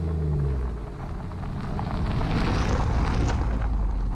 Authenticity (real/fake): real